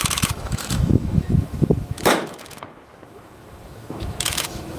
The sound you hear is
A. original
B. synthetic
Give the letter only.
B